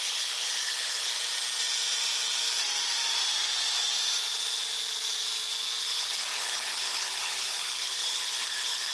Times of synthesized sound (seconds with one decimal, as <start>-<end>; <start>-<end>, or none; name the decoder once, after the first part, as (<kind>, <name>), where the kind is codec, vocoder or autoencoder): 0.0-1.1 (codec, HILCodec); 5.8-8.9